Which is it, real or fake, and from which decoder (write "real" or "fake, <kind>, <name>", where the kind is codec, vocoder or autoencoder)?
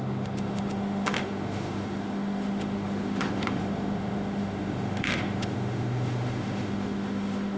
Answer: fake, autoencoder, DAC-VAE